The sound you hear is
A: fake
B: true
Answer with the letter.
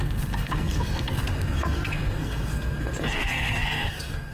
A